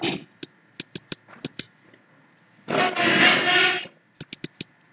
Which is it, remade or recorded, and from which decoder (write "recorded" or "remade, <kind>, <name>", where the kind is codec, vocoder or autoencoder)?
recorded